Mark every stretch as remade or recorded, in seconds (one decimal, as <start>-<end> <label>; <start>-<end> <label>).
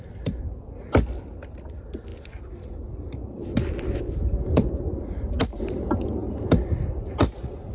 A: 0.0-7.7 recorded